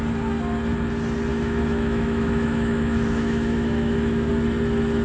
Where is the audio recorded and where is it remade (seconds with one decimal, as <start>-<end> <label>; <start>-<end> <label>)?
0.0-1.3 recorded; 1.3-4.3 remade; 4.3-5.0 recorded